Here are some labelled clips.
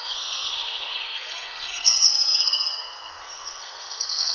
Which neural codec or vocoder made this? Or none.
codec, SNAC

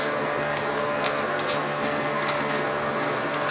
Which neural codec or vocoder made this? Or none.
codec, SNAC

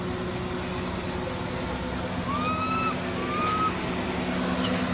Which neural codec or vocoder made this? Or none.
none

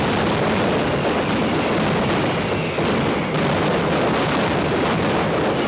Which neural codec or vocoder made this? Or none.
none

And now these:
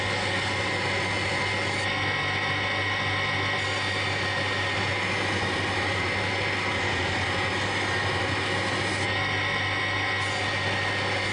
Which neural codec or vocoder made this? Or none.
none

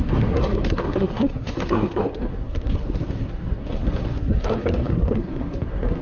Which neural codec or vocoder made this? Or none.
codec, SNAC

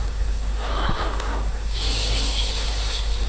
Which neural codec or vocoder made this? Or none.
codec, SNAC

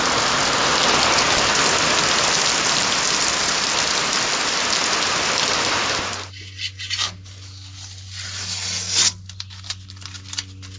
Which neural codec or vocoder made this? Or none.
none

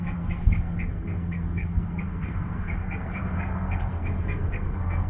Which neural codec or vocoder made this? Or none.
codec, SNAC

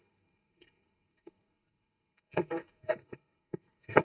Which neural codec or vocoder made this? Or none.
codec, SNAC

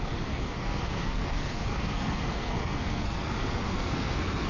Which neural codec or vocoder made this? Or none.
codec, SNAC